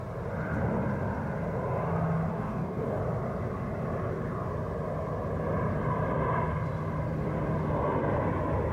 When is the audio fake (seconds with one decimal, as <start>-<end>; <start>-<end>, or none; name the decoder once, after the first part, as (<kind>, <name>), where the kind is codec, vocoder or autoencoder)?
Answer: 2.3-3.0 (codec, DAC)